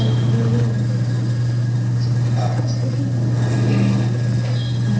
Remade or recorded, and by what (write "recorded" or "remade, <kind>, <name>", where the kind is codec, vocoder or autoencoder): recorded